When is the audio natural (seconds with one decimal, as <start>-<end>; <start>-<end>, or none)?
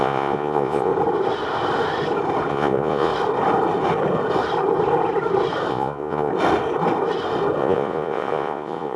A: 0.9-2.5; 3.1-5.7; 6.3-7.6